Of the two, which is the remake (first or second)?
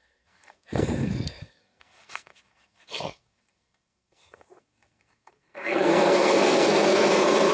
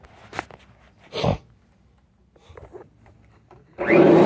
first